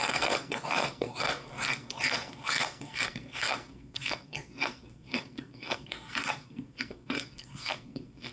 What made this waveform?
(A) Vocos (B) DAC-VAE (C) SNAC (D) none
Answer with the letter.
C